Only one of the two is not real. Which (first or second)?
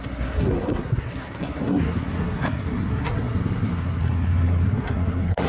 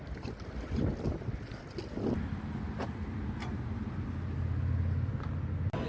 first